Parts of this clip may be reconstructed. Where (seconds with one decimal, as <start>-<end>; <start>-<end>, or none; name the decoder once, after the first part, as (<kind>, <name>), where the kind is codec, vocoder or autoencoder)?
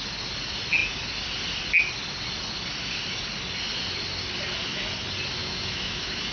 5.4-6.3 (autoencoder, DAC-VAE)